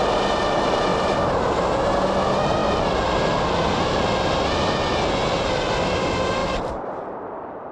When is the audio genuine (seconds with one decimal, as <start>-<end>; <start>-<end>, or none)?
0.0-0.9; 1.6-6.4